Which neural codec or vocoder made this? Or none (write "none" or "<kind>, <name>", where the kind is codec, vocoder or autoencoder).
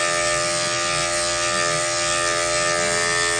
none